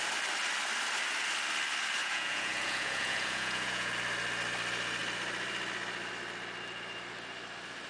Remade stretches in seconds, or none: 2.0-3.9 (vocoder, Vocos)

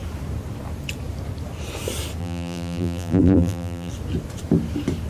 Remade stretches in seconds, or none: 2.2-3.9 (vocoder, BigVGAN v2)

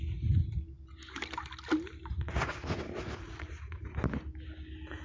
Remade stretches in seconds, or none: 2.1-3.8 (vocoder, Vocos)